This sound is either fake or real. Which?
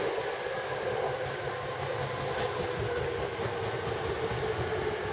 real